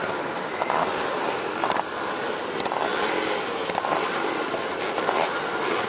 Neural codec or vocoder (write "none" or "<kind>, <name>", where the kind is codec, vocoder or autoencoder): none